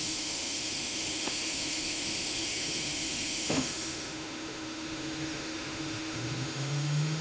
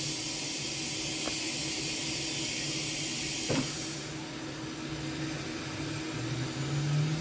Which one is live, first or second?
second